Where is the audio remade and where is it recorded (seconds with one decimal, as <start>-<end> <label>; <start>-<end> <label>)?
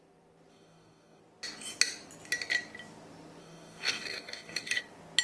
0.0-0.5 recorded; 0.5-1.2 remade; 1.2-3.4 recorded; 3.4-4.8 remade; 4.8-5.2 recorded